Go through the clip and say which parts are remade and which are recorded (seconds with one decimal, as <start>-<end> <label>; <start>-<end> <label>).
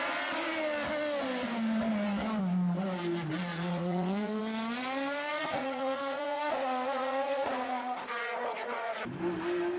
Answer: 0.0-3.5 recorded; 3.5-4.4 remade; 4.4-5.3 recorded; 5.3-9.0 remade; 9.0-9.8 recorded